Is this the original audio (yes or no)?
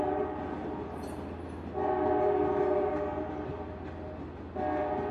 yes